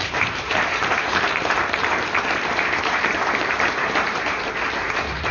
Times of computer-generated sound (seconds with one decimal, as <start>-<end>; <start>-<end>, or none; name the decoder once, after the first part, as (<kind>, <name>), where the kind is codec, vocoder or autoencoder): 0.0-1.9 (vocoder, BigVGAN v2); 2.4-5.3